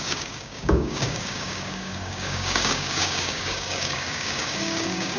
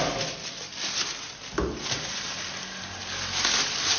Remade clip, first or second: first